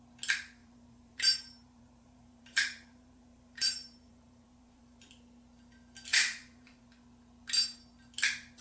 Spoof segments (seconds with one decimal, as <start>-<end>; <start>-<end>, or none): 0.6-5.1; 6.1-6.8